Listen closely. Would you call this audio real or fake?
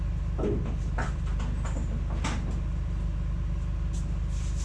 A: real